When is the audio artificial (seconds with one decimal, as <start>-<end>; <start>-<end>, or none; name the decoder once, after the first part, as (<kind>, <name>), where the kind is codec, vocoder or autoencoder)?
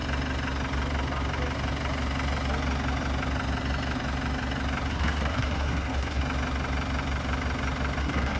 4.9-6.2 (codec, SNAC); 8.0-8.4